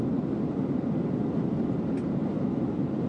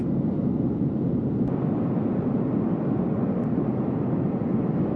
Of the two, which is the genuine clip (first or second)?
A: second